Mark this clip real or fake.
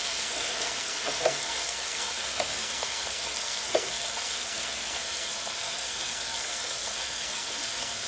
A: fake